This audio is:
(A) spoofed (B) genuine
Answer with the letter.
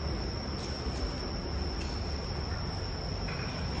B